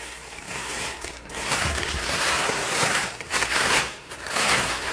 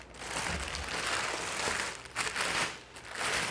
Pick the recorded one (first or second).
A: second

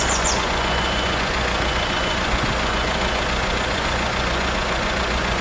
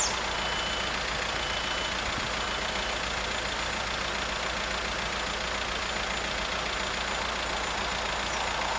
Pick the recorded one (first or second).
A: second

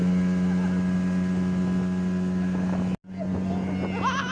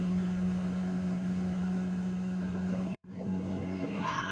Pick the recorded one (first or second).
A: first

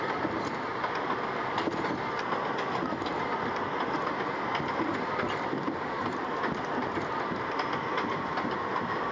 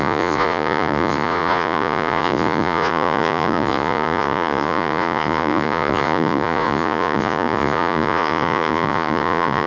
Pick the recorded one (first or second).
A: first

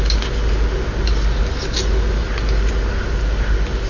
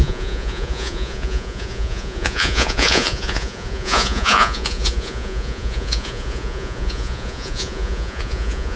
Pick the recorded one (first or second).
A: first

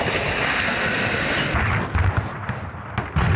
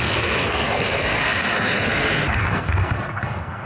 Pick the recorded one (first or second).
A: first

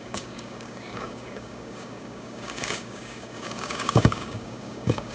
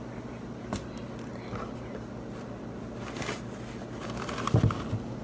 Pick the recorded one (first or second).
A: second